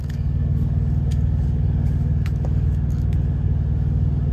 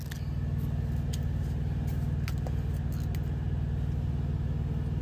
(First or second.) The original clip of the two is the second